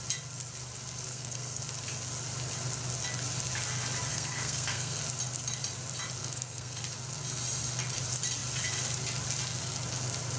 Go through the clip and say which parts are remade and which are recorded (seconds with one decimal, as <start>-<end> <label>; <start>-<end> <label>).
0.0-1.1 recorded; 1.1-1.6 remade; 1.6-4.1 recorded; 4.1-5.0 remade; 5.0-6.2 recorded; 6.2-6.8 remade; 6.8-10.4 recorded